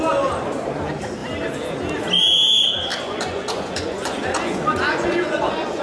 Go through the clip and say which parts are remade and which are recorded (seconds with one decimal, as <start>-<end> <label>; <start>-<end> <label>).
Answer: 0.0-2.9 recorded; 2.9-5.8 remade